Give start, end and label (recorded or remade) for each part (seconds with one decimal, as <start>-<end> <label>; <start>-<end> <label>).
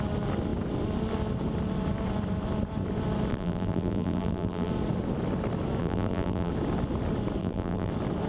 0.0-3.3 recorded; 3.3-4.7 remade; 4.7-5.8 recorded; 5.8-6.5 remade; 6.5-7.4 recorded; 7.4-7.9 remade; 7.9-8.3 recorded